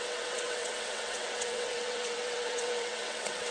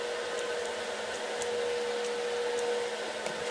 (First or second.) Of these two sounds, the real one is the second